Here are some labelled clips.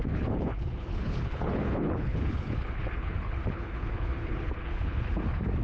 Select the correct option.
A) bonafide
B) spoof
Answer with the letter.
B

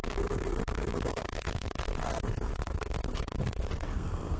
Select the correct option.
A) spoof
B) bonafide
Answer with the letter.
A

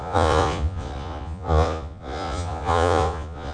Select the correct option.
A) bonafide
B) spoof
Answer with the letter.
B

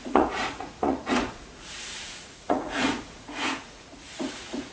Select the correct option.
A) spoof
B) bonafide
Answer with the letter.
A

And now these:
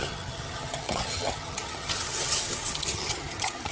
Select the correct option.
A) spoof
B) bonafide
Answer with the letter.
A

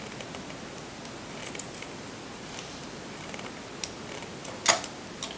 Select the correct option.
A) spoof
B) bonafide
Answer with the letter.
B